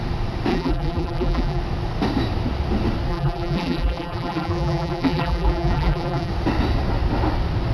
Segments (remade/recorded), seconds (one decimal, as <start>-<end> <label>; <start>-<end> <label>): 0.0-0.5 recorded; 0.5-1.6 remade; 1.6-3.1 recorded; 3.1-6.3 remade; 6.3-7.7 recorded